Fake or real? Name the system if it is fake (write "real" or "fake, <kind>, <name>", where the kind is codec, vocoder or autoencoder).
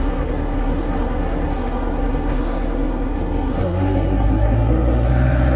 fake, codec, SNAC